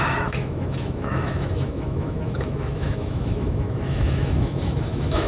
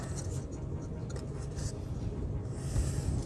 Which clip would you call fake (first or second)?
first